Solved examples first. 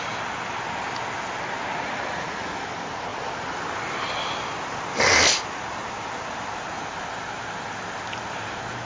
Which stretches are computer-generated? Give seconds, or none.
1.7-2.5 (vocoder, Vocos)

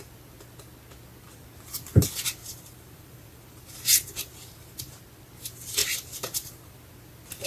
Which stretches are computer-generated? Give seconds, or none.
2.4-5.0 (vocoder, BigVGAN v2); 5.8-6.5

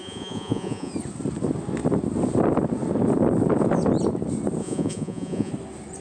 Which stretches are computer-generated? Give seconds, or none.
0.0-0.9 (vocoder, Vocos); 4.6-5.5

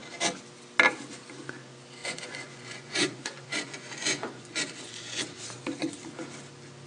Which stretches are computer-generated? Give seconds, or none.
2.0-5.4 (vocoder, Vocos)

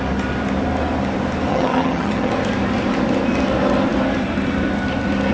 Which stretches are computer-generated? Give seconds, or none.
1.5-2.3 (vocoder, HiFi-GAN)

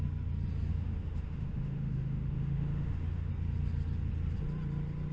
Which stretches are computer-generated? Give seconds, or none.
0.7-3.3 (autoencoder, DAC-VAE)

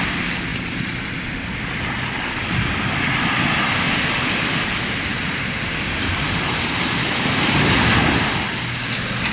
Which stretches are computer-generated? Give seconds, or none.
0.5-1.6 (vocoder, BigVGAN v2); 5.1-6.0

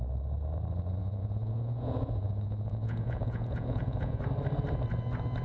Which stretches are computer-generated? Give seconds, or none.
1.0-4.2 (vocoder, Vocos)